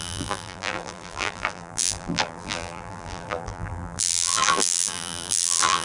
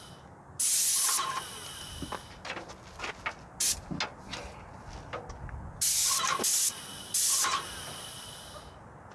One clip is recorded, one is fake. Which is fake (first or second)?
first